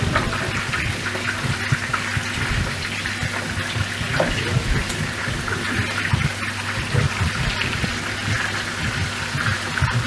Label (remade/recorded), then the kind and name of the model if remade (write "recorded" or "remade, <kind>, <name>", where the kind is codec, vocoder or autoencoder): recorded